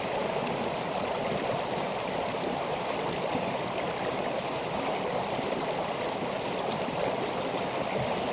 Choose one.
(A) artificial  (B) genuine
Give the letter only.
B